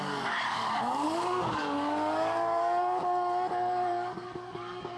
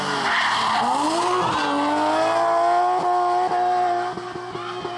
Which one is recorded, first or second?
second